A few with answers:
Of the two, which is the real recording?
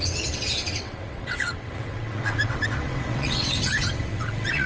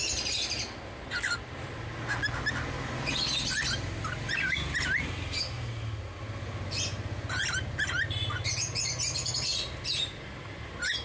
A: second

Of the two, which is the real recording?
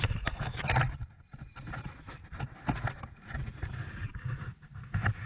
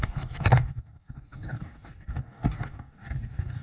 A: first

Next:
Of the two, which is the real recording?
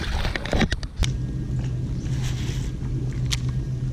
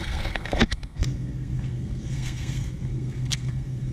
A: first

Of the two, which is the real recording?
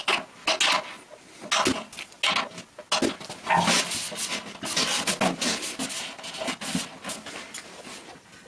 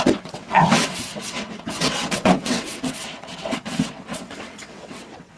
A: first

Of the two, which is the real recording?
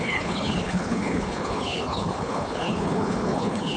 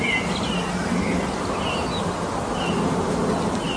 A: second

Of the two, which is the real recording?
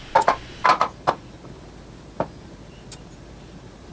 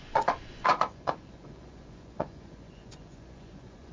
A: first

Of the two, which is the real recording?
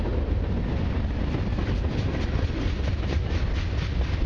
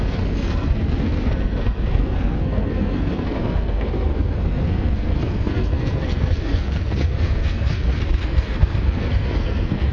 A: first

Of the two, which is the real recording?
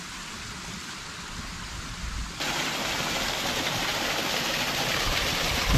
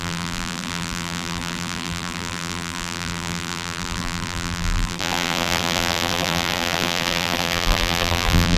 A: first